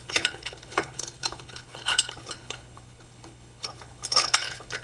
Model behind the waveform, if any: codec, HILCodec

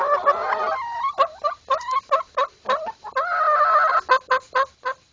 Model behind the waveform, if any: none